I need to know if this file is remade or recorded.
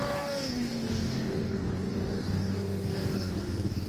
remade